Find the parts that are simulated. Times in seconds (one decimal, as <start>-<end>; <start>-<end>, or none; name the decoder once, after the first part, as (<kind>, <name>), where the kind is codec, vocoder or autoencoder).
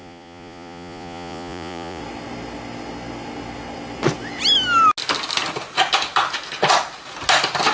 0.0-2.0 (vocoder, Vocos)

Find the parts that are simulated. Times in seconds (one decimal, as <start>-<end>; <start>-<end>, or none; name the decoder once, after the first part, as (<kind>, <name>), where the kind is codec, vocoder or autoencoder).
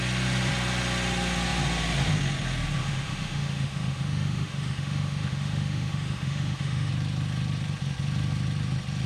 2.8-6.9 (autoencoder, DAC-VAE)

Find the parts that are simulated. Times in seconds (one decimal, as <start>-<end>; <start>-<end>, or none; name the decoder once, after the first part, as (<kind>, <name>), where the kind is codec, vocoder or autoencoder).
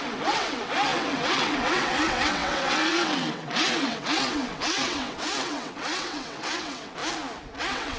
0.0-7.0 (vocoder, WaveNeXt); 7.6-8.0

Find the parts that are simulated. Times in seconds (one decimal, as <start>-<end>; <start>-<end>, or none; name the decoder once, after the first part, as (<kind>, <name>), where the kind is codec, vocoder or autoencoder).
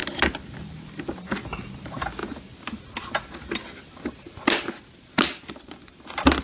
none